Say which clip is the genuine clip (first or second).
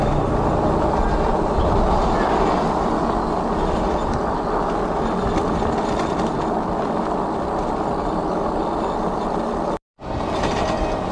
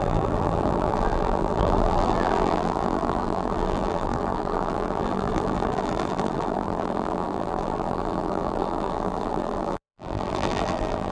first